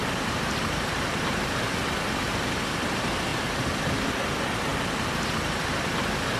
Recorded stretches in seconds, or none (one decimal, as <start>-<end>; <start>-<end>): 2.4-6.4